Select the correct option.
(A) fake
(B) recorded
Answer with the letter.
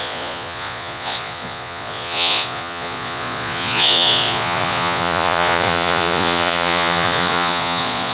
A